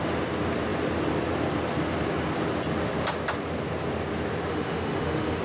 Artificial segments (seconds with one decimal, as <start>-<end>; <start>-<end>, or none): 4.5-5.4

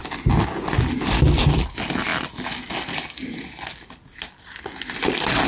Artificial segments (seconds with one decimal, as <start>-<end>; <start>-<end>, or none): none

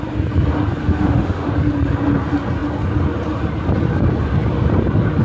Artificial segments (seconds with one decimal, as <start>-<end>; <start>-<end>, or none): 0.8-1.5

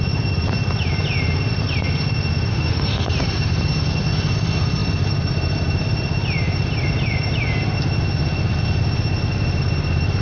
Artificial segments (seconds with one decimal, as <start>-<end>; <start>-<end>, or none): 2.5-3.1

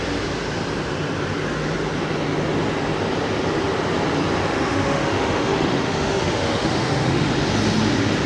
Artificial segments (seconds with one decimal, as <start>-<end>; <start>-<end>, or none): 4.5-7.3

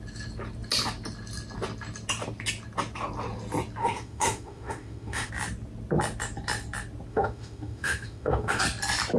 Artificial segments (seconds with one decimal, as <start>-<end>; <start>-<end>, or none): 3.8-5.3; 7.1-8.6

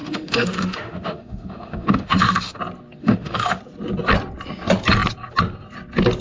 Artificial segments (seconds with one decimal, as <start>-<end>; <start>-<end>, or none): 0.0-2.6; 3.0-3.6

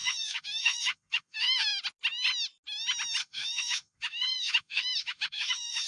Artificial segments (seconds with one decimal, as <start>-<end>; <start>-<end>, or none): 0.0-1.7; 3.2-5.9